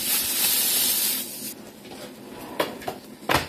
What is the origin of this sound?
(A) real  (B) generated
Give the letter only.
A